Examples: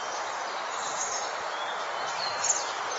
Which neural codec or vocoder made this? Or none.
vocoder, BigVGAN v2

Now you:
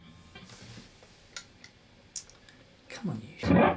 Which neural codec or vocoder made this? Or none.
none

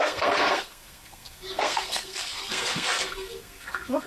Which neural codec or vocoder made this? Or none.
codec, SNAC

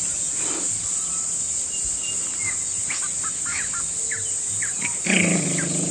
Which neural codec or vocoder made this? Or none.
none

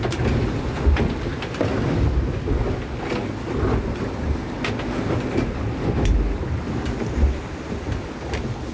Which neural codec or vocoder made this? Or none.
none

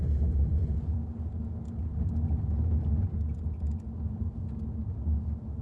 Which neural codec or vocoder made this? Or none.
none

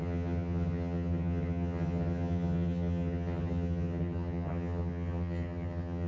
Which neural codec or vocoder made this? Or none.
vocoder, HiFi-GAN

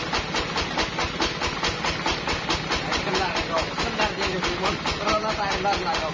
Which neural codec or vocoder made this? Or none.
none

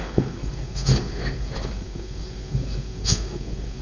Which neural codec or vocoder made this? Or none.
codec, SNAC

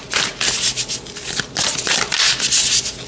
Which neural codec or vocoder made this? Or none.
none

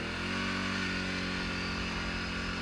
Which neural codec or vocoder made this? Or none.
none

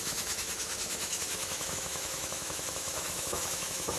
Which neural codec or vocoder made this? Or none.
autoencoder, DAC-VAE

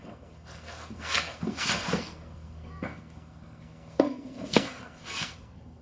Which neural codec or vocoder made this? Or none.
codec, SNAC